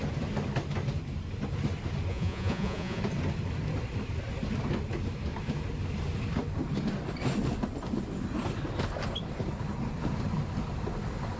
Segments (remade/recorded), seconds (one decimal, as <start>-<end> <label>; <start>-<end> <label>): 0.0-2.1 recorded; 2.1-3.0 remade; 3.0-11.4 recorded